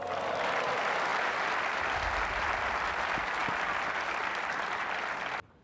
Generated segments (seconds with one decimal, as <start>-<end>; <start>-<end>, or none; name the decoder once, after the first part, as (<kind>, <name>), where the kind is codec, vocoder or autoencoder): none